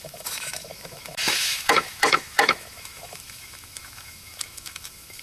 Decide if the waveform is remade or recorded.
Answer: remade